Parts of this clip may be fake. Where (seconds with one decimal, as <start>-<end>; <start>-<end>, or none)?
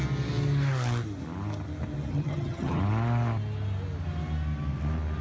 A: 2.1-2.8